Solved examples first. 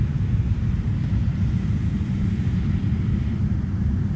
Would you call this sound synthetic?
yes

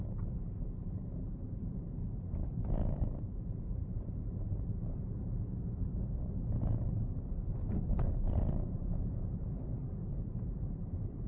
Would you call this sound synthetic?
yes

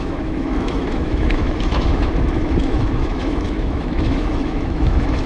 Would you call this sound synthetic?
yes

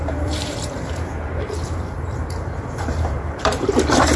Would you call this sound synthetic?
yes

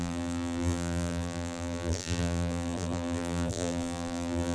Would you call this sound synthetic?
yes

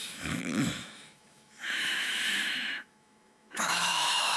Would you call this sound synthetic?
yes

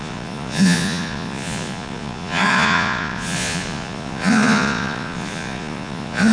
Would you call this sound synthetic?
yes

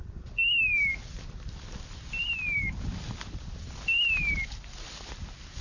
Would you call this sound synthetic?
no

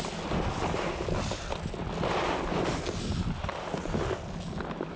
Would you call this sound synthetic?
no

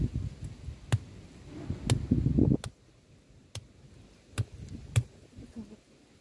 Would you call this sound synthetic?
no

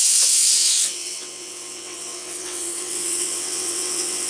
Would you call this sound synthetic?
yes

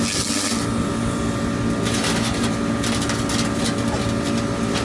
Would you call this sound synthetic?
no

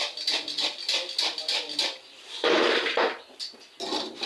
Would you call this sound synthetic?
no